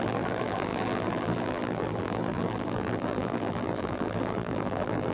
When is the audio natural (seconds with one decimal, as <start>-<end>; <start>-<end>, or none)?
none

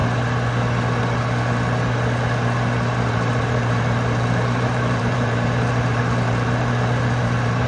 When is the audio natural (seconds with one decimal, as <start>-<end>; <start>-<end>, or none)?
0.0-3.1

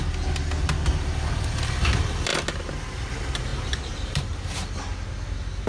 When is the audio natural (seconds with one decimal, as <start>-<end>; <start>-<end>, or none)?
0.0-3.5; 4.7-5.7